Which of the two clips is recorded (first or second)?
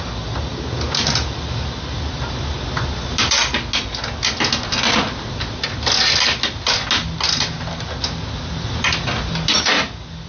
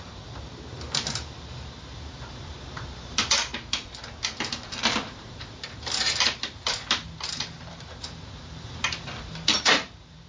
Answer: first